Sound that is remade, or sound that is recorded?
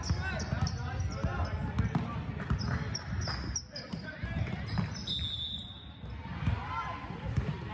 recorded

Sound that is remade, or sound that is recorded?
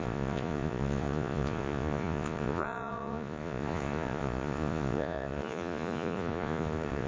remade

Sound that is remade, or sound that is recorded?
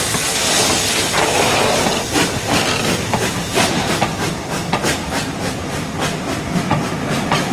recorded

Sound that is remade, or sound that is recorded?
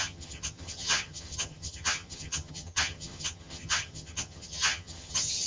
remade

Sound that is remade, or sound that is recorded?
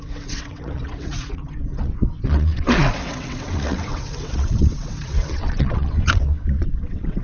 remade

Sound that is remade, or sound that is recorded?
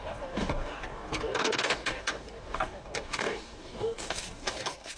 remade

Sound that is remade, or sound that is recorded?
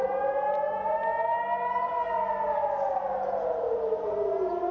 recorded